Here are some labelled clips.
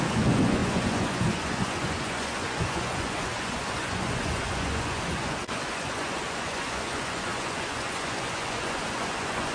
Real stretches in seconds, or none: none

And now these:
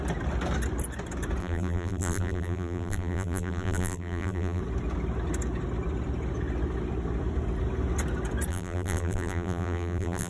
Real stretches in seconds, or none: 0.0-1.4; 4.6-8.5